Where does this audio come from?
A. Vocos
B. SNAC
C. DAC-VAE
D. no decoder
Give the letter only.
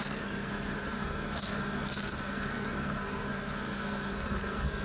B